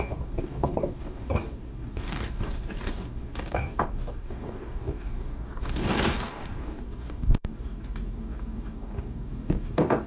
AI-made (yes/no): yes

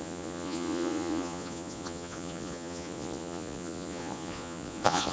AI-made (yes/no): yes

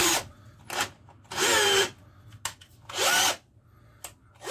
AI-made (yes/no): no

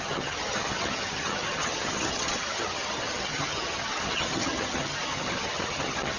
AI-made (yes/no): yes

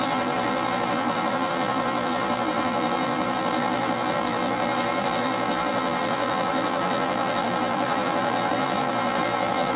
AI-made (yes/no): yes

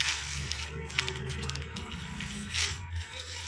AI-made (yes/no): yes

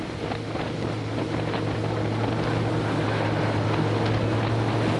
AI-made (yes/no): no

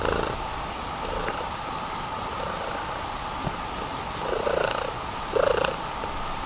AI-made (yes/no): no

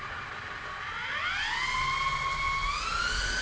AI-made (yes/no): no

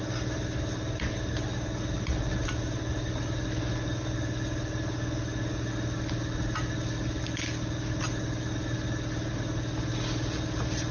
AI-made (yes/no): no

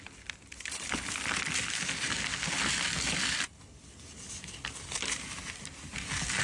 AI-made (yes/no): no